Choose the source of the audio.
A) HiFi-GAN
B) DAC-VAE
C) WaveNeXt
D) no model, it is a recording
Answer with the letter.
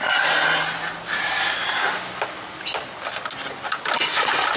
D